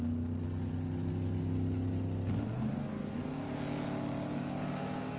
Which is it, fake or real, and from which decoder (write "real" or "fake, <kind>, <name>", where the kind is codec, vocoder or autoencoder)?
real